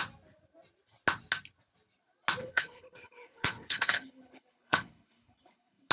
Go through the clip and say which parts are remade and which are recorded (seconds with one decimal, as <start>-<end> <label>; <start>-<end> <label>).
0.0-2.4 recorded; 2.4-5.9 remade